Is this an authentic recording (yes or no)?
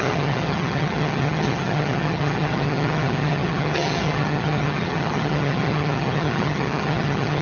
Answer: no